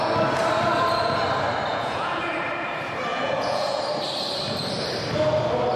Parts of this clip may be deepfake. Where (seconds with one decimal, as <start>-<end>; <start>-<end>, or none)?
1.7-2.3; 3.1-3.8